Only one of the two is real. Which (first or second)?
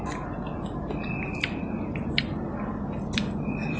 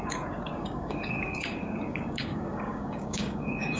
first